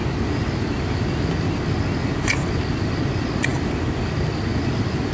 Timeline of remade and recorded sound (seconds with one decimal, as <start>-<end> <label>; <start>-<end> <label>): 0.0-5.1 recorded

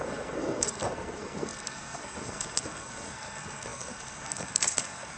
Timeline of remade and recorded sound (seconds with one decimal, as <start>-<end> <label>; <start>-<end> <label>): 0.0-5.2 remade

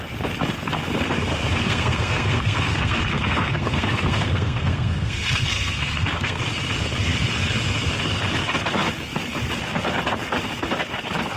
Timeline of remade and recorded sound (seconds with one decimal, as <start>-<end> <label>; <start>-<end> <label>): 0.0-1.6 recorded; 1.6-6.4 remade; 6.4-11.4 recorded